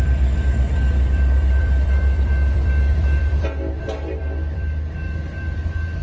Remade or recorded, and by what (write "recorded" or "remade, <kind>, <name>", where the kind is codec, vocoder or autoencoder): remade, vocoder, BigVGAN v2